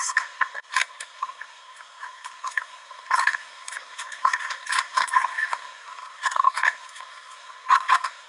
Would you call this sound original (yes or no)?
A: no